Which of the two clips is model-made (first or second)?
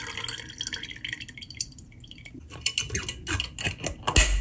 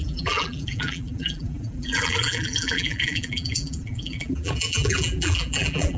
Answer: second